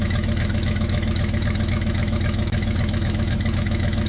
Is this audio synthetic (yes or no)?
yes